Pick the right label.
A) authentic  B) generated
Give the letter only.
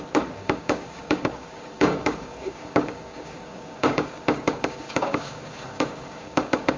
B